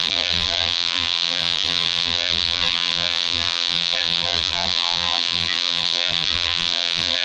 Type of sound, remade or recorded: remade